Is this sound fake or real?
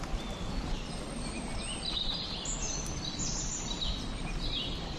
real